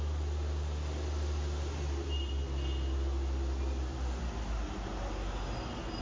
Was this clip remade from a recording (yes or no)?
no